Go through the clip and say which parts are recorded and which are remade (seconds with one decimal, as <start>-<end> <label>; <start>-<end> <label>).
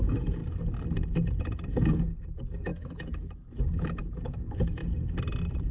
0.0-0.4 remade; 0.4-1.7 recorded; 1.7-4.8 remade; 4.8-5.7 recorded